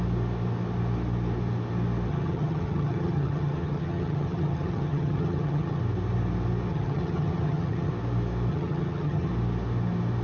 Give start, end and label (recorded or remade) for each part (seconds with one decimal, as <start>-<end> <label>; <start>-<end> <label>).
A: 0.0-2.1 recorded; 2.1-5.8 remade; 5.8-6.7 recorded; 6.7-7.9 remade; 7.9-8.5 recorded; 8.5-9.3 remade; 9.3-10.2 recorded